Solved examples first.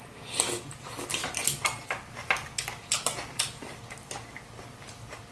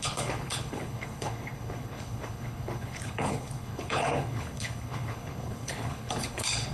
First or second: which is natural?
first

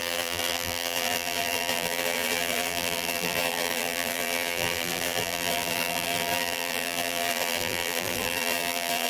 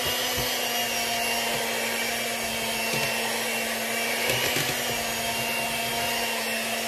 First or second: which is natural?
second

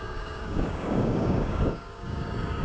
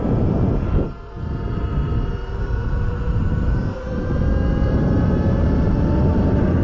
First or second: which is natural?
second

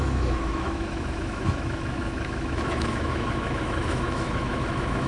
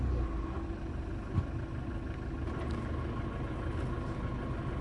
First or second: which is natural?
second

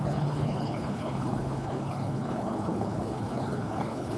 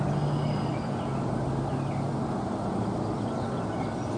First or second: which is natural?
second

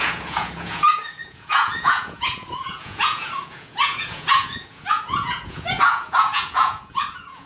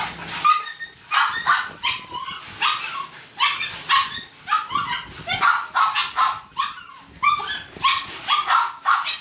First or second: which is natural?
second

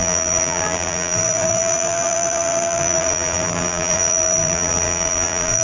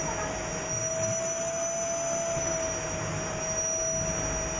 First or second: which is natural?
second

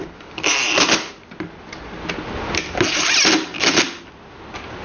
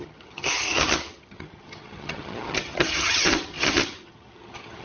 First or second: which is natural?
first